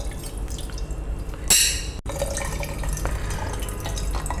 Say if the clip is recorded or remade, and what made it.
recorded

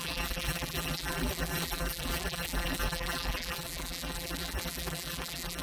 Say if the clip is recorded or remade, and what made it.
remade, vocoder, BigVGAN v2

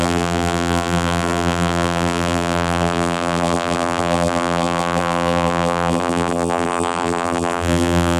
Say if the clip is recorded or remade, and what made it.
remade, vocoder, BigVGAN v2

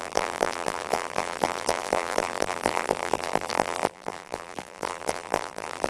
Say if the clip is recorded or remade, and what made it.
remade, vocoder, BigVGAN v2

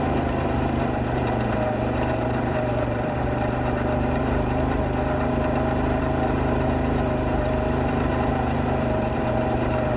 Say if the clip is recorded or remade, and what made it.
remade, vocoder, BigVGAN v2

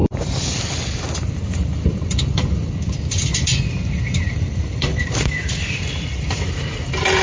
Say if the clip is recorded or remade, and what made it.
remade, vocoder, BigVGAN v2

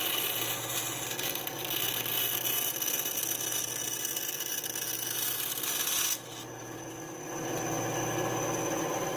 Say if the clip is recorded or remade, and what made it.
recorded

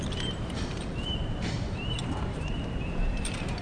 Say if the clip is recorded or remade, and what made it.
remade, vocoder, BigVGAN v2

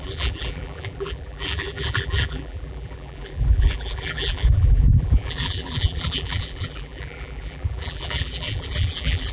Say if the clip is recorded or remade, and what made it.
remade, vocoder, BigVGAN v2